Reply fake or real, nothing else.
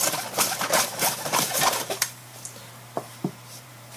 fake